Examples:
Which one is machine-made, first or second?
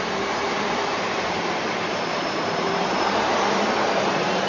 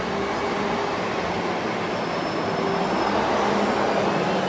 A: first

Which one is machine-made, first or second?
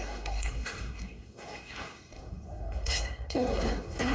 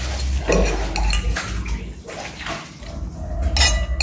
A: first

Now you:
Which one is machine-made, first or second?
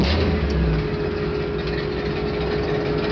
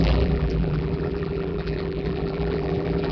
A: second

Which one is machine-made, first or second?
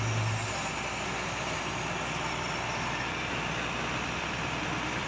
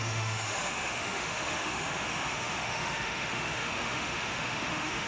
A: second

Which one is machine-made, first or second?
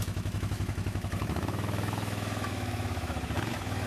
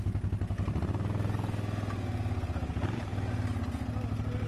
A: first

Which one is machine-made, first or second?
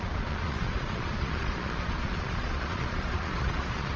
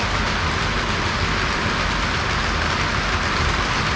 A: first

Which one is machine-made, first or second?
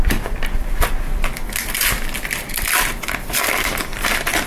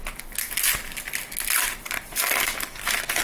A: first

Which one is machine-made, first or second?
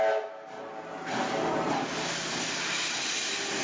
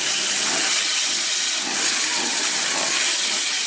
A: second